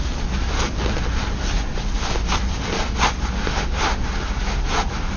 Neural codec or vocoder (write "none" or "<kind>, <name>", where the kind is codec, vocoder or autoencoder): none